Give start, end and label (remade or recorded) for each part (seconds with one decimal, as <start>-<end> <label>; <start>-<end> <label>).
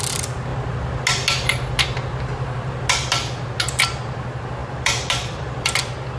0.0-4.6 recorded; 4.6-5.8 remade; 5.8-6.2 recorded